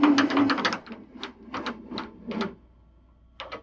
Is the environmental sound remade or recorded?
recorded